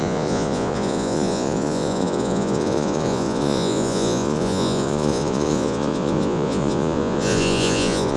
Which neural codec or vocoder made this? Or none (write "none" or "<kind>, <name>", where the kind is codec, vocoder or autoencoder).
vocoder, Vocos